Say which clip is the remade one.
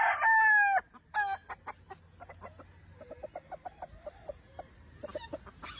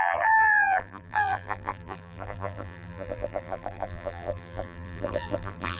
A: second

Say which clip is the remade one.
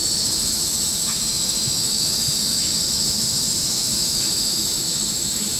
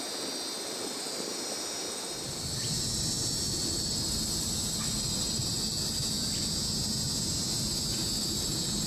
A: first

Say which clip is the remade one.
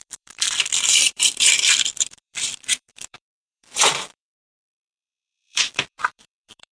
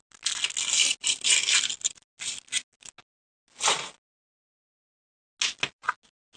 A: first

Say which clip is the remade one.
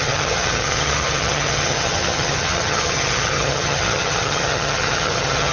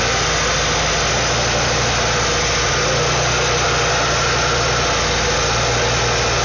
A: first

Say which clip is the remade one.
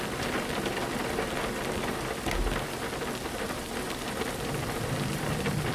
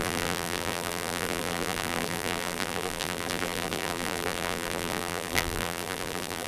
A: second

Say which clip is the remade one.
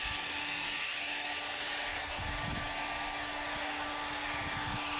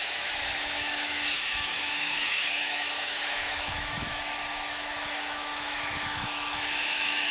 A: second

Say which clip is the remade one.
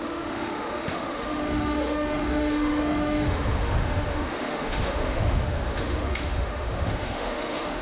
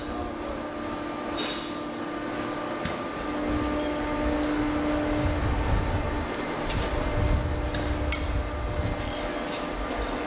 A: first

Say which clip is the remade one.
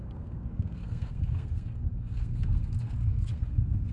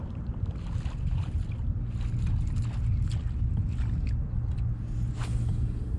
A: first